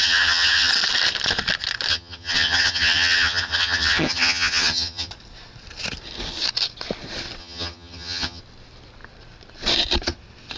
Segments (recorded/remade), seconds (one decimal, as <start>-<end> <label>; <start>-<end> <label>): 0.0-0.7 remade; 0.7-1.9 recorded; 1.9-5.1 remade; 5.1-7.4 recorded; 7.4-8.4 remade; 8.4-10.6 recorded